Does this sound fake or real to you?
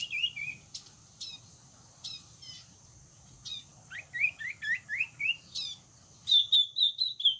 real